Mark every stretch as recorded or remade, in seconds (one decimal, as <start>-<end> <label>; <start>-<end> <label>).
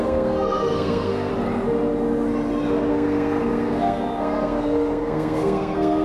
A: 0.0-1.3 remade; 1.3-2.9 recorded; 2.9-6.0 remade